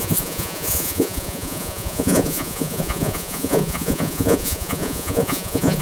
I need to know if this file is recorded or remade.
remade